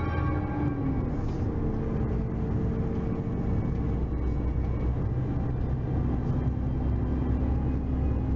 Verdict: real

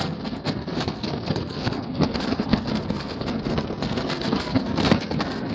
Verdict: fake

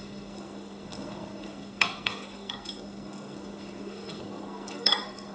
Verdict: fake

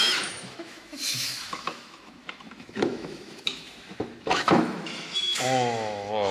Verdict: fake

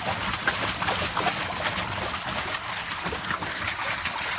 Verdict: real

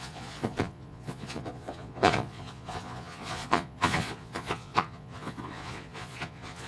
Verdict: fake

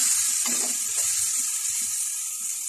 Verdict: fake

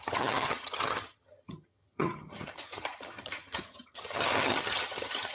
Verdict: fake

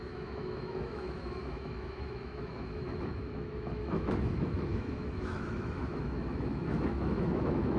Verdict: fake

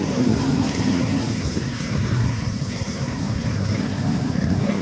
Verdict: fake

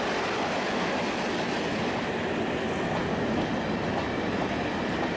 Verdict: real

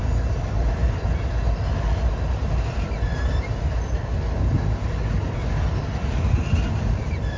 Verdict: real